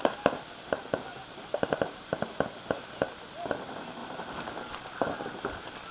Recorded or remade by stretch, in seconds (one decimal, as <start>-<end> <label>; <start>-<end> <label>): 0.0-1.2 recorded; 1.2-2.1 remade; 2.1-4.0 recorded; 4.0-5.2 remade; 5.2-5.9 recorded